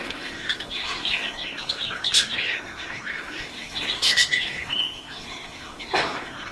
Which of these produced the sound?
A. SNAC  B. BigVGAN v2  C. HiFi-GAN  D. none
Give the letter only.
A